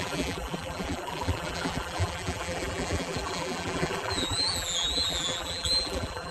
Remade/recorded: remade